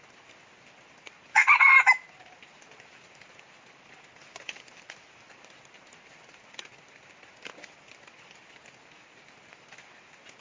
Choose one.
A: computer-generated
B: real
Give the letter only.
B